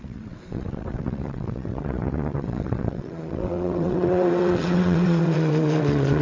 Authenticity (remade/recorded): remade